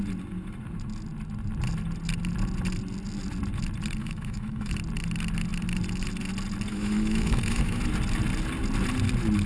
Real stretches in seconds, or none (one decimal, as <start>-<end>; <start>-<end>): 0.0-4.0; 4.7-6.7; 7.8-9.5